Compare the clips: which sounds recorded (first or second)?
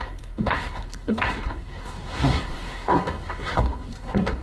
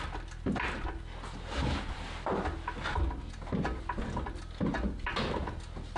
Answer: second